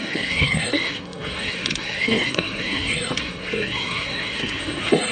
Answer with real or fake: fake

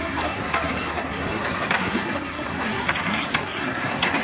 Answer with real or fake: fake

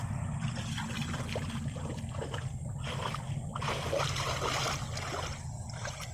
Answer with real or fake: real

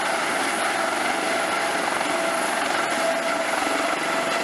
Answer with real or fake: real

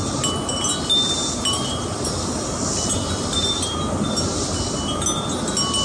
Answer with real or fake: real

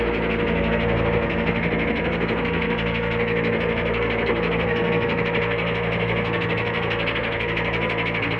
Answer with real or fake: fake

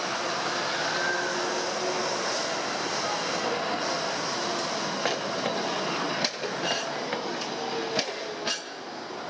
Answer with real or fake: real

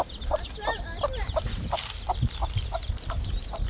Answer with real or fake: real